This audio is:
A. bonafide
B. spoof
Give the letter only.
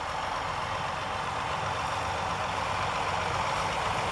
A